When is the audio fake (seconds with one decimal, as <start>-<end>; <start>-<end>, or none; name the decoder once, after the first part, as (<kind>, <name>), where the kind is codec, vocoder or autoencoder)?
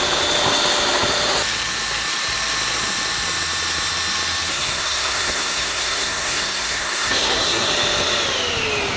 4.5-7.7 (codec, SNAC)